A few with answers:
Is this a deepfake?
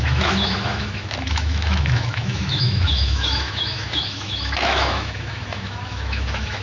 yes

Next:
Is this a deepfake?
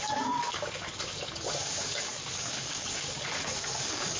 yes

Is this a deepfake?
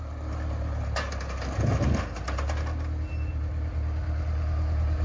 no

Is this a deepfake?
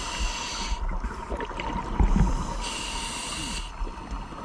no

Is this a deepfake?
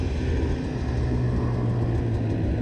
no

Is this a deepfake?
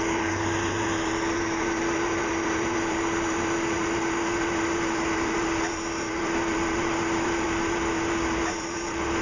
yes